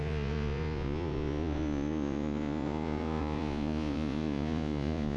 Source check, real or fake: fake